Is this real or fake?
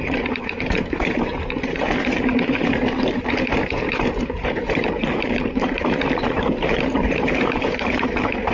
fake